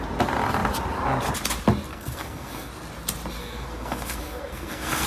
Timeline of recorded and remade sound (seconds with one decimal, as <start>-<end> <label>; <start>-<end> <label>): 0.0-1.9 recorded; 1.9-2.7 remade; 2.7-3.4 recorded; 3.4-5.1 remade

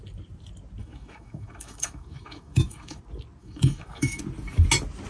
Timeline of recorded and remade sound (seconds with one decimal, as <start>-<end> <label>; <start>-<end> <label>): 0.0-0.8 recorded; 0.8-3.0 remade; 3.0-3.4 recorded; 3.4-4.2 remade; 4.2-5.1 recorded

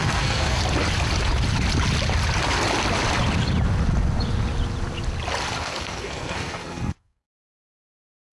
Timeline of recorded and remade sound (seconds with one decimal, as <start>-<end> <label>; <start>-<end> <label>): 0.0-0.6 remade; 0.6-5.6 recorded; 5.6-8.3 remade

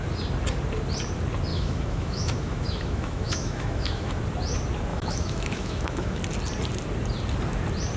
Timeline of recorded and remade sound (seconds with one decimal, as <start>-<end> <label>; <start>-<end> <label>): 0.0-1.5 recorded; 1.5-4.2 remade; 4.2-4.9 recorded; 4.9-6.2 remade; 6.2-8.0 recorded

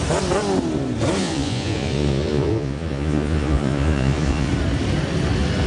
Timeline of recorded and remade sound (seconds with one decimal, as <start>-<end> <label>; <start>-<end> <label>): 0.0-1.2 recorded; 1.2-4.5 remade; 4.5-5.7 recorded

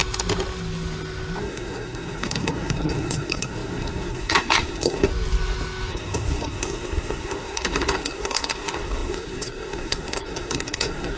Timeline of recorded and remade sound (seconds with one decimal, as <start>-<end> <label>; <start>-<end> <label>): 0.0-1.4 recorded; 1.4-5.1 remade; 5.1-5.9 recorded; 5.9-11.2 remade

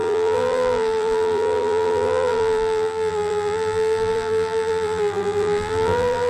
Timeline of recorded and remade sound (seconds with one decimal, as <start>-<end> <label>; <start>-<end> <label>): 0.0-6.3 remade